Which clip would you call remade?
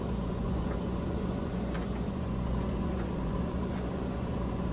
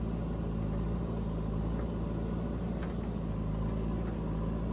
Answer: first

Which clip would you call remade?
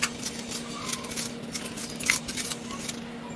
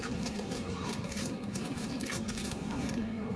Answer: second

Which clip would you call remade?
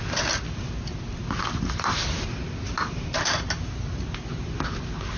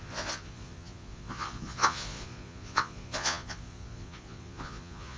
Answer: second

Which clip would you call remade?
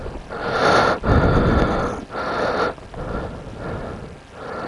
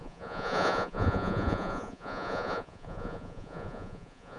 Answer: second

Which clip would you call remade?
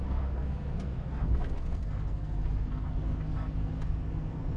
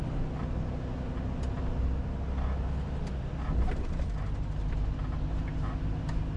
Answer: first